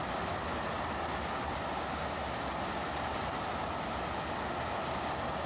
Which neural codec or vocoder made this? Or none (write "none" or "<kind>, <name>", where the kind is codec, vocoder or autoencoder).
none